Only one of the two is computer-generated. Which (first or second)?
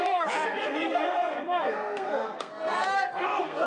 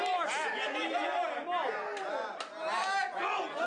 first